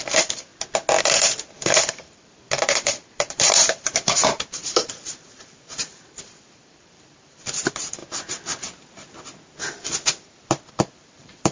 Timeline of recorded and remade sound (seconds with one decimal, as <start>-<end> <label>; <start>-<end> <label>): 0.0-0.5 remade; 0.5-1.0 recorded; 1.0-8.0 remade; 8.0-10.7 recorded; 10.7-11.5 remade